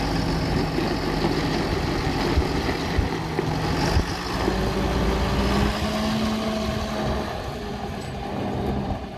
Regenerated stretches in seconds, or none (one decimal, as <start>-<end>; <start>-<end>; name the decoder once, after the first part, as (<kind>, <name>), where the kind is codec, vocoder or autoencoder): none

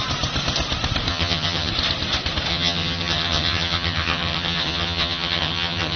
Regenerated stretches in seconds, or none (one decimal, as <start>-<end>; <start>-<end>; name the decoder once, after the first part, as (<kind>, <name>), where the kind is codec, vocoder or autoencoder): 1.1-1.7 (vocoder, HiFi-GAN); 2.5-6.0